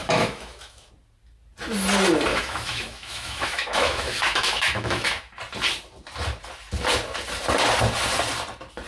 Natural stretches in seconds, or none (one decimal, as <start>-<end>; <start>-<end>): 0.9-2.3; 5.3-8.9